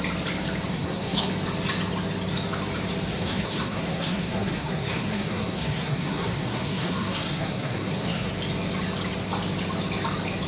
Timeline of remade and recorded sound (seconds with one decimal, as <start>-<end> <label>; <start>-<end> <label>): 0.0-0.7 recorded; 0.7-1.3 remade; 1.3-3.1 recorded; 3.1-8.3 remade; 8.3-10.5 recorded